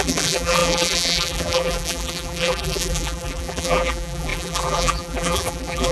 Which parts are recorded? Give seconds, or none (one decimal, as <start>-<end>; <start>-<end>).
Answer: none